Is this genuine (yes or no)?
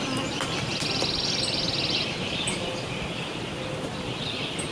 yes